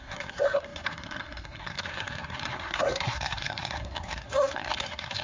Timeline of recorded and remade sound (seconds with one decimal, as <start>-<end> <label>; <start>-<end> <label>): 0.0-5.2 remade